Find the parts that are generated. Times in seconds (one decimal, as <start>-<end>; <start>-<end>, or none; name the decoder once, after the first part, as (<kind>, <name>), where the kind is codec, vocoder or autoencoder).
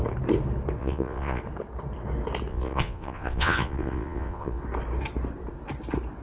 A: 0.8-1.4 (vocoder, Vocos); 2.5-4.6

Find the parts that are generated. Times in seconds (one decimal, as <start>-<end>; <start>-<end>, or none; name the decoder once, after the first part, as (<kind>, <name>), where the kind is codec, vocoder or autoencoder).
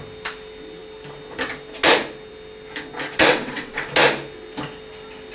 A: 3.2-3.9 (vocoder, WaveNeXt)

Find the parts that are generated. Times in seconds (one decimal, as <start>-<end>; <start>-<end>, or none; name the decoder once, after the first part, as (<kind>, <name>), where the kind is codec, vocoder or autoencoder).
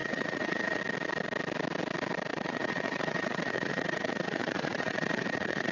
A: 0.0-0.8 (vocoder, Vocos); 2.3-5.7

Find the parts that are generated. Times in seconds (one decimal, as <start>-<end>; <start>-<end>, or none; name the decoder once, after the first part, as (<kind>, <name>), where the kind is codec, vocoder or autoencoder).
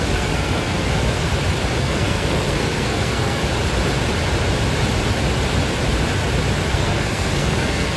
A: 0.0-1.3 (codec, SNAC); 1.8-3.4; 6.7-8.0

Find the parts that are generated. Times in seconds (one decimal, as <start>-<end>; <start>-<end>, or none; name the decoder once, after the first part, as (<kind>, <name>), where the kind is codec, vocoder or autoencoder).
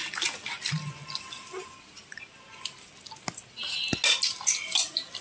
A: none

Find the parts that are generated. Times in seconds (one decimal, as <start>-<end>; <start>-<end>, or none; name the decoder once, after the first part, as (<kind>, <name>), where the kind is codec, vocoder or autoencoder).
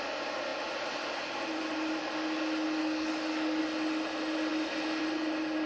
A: 2.8-3.6 (codec, DAC)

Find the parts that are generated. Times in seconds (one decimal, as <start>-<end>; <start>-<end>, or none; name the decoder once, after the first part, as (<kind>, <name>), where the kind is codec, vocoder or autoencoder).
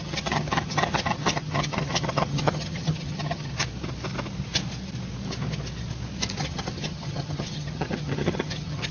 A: 0.0-3.5 (vocoder, HiFi-GAN); 6.4-8.9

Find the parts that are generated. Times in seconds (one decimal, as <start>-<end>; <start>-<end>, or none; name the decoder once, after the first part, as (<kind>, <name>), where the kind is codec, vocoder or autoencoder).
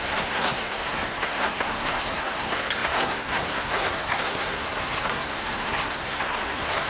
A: 0.0-6.9 (codec, SNAC)